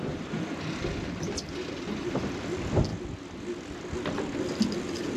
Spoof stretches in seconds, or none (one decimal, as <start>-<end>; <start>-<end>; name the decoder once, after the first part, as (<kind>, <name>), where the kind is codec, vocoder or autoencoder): 0.0-2.9 (vocoder, BigVGAN v2); 4.7-5.2